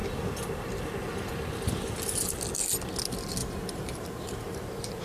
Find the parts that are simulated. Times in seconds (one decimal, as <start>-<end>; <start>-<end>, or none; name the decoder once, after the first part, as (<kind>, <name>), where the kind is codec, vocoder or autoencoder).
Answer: 3.4-5.0 (vocoder, BigVGAN v2)